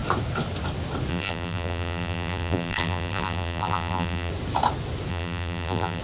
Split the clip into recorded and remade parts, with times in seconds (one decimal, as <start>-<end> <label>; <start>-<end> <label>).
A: 0.0-1.1 recorded; 1.1-4.3 remade; 4.3-5.1 recorded; 5.1-6.0 remade